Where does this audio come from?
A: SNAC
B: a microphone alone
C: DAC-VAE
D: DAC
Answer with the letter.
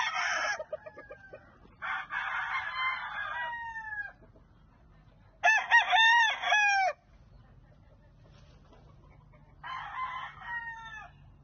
B